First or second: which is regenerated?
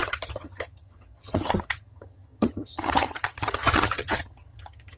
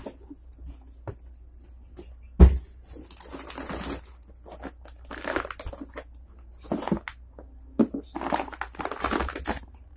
first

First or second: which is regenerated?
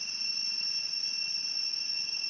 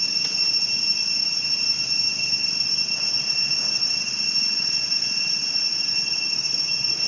second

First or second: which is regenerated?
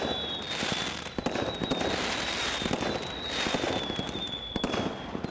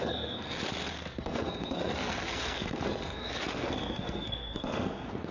second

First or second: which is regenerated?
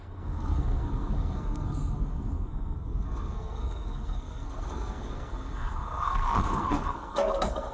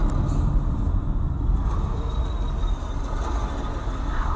first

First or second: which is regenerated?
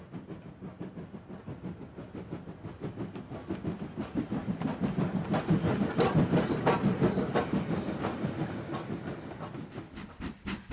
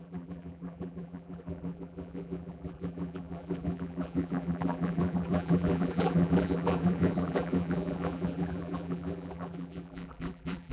second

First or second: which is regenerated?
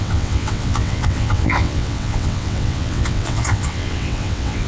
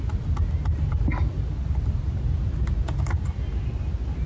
first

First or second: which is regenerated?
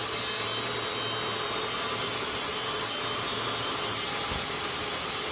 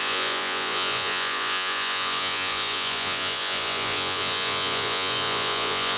second